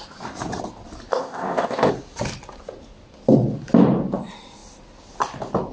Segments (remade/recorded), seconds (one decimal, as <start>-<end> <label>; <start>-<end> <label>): 0.0-1.1 recorded; 1.1-1.9 remade; 1.9-5.7 recorded